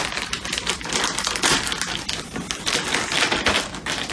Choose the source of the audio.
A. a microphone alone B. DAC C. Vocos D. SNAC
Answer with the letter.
A